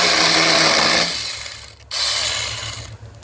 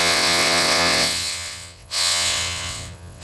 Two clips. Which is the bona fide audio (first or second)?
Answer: first